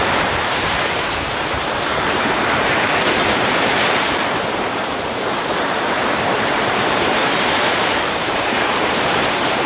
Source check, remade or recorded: remade